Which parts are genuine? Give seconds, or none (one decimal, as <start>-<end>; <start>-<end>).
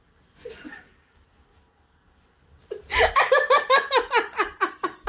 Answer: 0.0-5.1